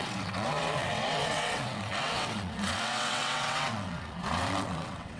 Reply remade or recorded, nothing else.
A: remade